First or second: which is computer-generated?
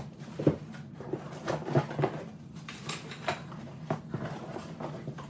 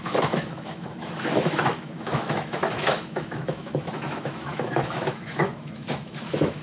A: second